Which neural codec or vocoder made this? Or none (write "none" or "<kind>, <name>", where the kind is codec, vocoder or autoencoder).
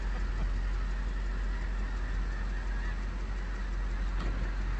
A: none